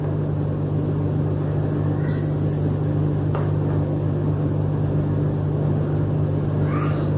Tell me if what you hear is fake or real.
real